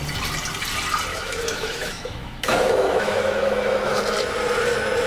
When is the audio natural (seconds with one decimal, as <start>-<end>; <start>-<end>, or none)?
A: 0.0-1.1; 4.0-5.1